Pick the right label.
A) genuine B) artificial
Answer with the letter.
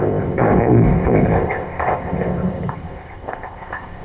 B